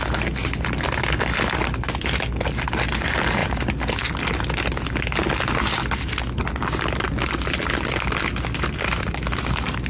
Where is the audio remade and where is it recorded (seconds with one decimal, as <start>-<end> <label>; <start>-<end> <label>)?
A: 0.0-9.9 recorded